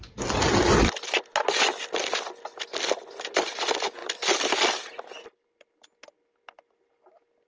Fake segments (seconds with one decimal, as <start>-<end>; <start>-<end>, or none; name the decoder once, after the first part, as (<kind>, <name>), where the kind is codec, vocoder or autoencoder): none

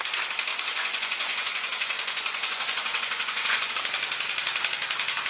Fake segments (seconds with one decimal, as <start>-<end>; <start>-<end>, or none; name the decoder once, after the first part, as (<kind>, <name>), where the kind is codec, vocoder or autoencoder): 0.5-3.7 (vocoder, Vocos)

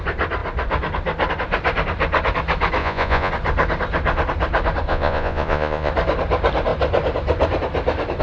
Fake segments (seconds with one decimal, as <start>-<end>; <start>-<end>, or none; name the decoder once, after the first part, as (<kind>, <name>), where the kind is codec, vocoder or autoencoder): 2.8-3.3 (vocoder, Vocos); 4.9-5.9

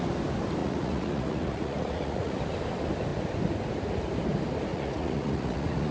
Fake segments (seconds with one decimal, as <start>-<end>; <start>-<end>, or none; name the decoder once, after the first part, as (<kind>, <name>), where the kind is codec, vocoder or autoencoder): 0.6-2.4 (vocoder, Vocos); 4.7-5.9

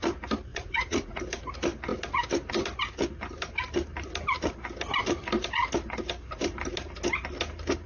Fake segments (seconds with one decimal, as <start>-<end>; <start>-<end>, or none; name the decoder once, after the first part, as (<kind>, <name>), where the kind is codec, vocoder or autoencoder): 0.5-1.2 (vocoder, Vocos)